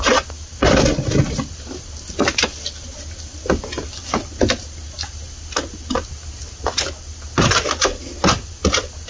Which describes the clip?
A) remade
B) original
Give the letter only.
B